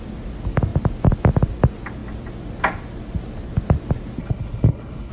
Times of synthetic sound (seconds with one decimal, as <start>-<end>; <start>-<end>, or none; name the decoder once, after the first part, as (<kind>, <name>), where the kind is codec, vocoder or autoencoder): 4.2-5.1 (codec, HILCodec)